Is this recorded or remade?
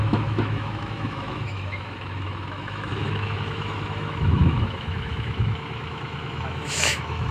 remade